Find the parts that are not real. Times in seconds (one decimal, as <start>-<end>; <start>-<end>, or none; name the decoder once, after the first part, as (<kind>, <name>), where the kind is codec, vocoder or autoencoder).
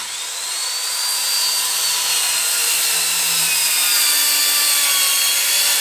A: none